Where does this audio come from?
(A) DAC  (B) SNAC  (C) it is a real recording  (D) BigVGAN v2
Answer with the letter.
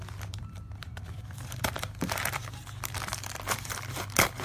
D